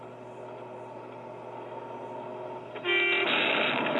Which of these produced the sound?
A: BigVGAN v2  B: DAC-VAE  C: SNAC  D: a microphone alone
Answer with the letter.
D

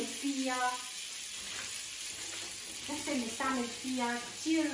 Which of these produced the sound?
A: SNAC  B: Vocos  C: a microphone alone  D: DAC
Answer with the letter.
C